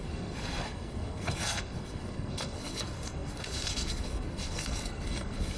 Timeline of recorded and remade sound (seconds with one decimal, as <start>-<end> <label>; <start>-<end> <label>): 0.0-5.6 remade